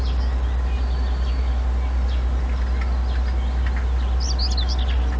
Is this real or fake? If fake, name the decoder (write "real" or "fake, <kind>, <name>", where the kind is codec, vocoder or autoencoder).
real